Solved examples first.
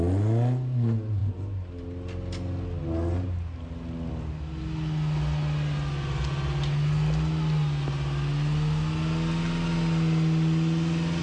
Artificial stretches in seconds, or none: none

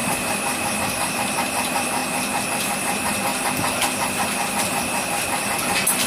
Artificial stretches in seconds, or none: 0.0-2.0 (vocoder, BigVGAN v2); 2.8-3.3

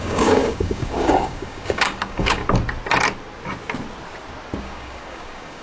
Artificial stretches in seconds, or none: 0.0-2.4 (codec, DAC); 4.6-5.6

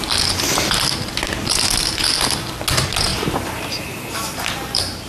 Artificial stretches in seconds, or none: 3.1-5.1 (vocoder, BigVGAN v2)

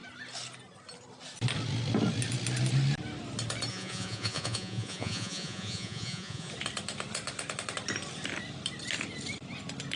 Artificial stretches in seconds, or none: 3.7-6.5 (vocoder, Vocos)

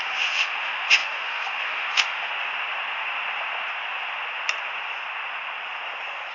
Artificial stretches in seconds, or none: 0.0-2.3 (autoencoder, DAC-VAE)

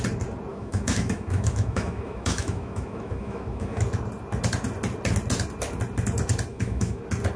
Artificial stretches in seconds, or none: 0.5-3.8 (autoencoder, DAC-VAE); 6.5-7.0

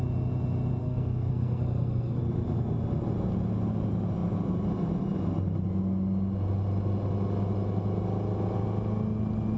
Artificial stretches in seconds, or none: 0.8-2.2 (codec, SNAC)